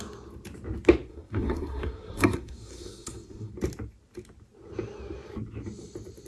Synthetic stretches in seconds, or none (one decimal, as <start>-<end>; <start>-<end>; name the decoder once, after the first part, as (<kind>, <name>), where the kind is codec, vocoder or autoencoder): 1.1-3.5 (codec, SNAC)